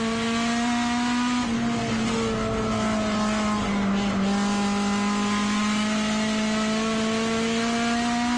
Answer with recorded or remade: recorded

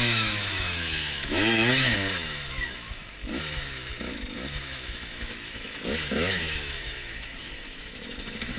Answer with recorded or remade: remade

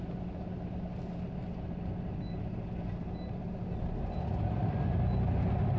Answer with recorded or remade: recorded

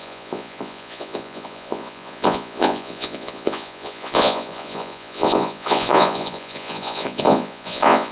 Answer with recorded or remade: remade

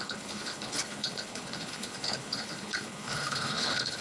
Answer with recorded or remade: remade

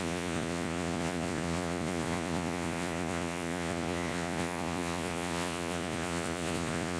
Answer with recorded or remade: remade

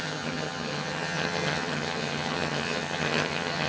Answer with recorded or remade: remade